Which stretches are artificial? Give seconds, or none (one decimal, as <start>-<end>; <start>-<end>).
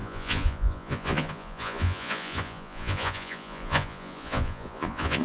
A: 0.0-5.2